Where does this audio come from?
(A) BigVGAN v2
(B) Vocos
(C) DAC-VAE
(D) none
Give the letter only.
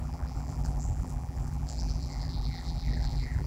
A